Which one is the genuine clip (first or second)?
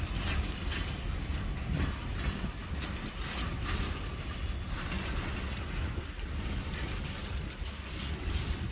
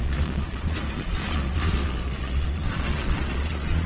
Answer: first